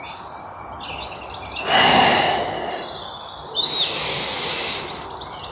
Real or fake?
real